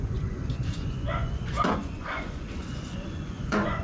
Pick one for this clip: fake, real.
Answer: fake